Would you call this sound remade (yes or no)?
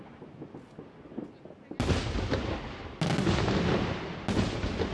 no